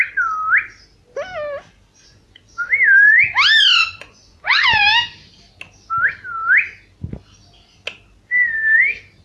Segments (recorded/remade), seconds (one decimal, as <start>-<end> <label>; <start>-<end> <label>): 0.0-2.0 recorded; 2.0-2.7 remade; 2.7-3.8 recorded; 3.8-4.8 remade; 4.8-9.2 recorded